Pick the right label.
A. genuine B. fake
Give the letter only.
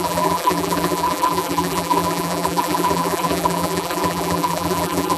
B